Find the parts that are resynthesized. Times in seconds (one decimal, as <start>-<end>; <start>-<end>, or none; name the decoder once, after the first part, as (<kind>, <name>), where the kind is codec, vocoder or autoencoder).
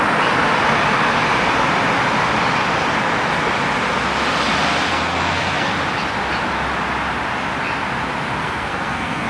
4.9-5.7 (codec, SNAC); 8.4-9.3